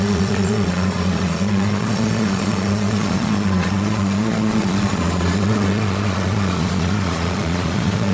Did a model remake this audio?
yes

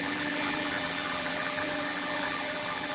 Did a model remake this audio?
yes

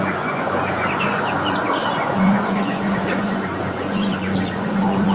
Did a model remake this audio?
yes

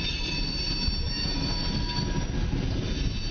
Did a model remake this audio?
no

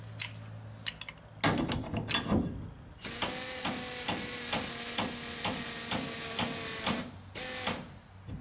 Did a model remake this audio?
no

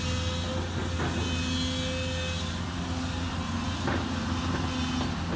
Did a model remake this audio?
no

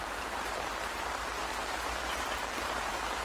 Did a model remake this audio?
yes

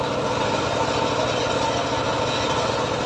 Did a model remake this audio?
no